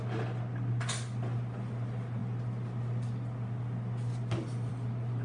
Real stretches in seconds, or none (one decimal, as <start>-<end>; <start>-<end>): 0.0-5.2